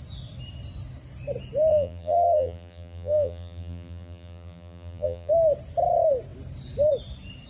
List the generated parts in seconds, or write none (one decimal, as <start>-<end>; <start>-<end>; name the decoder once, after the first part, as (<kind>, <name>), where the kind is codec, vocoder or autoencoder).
1.7-5.3 (vocoder, BigVGAN v2)